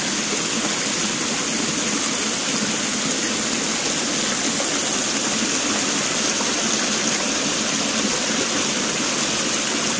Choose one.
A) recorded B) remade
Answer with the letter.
A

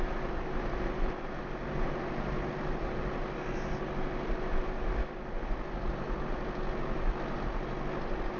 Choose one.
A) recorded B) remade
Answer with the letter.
A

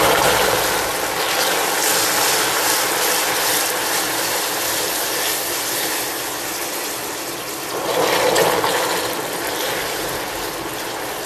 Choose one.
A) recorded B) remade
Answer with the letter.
A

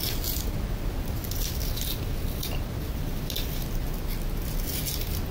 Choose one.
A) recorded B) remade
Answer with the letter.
A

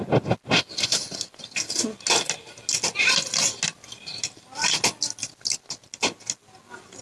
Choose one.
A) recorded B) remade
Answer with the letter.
A